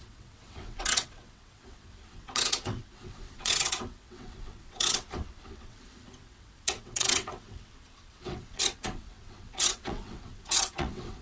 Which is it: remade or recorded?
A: remade